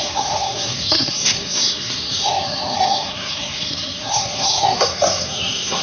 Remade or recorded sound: remade